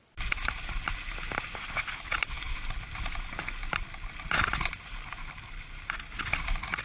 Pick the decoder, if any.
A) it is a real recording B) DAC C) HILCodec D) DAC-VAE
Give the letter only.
A